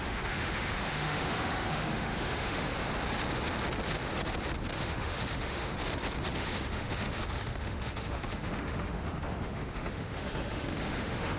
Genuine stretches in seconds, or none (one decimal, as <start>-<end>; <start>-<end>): 2.7-4.8; 5.8-6.4